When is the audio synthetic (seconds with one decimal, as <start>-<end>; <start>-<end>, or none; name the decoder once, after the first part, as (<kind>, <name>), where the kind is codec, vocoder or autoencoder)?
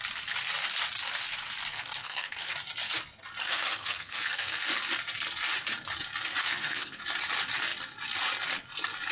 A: 1.7-2.5 (codec, SNAC); 3.4-4.6; 6.4-7.0